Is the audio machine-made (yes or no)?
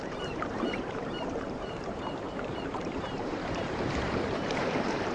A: yes